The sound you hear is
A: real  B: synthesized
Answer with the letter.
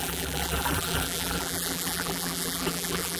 B